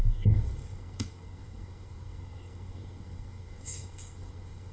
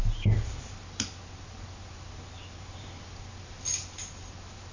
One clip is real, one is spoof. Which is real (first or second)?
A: second